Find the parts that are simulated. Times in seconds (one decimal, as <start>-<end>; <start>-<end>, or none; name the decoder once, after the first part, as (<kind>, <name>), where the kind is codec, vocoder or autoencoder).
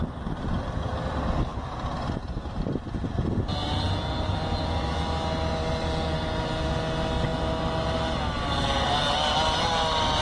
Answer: none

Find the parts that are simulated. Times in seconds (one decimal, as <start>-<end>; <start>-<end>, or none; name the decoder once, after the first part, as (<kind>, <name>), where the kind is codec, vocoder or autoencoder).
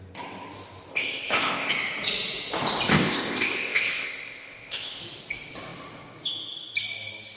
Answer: 0.9-1.7 (codec, ZipCodec); 2.9-5.0